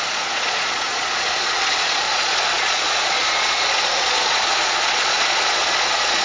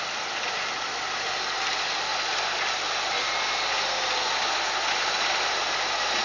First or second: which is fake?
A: first